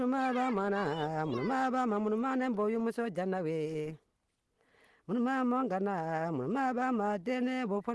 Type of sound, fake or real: real